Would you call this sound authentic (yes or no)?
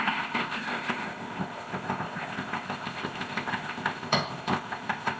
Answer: no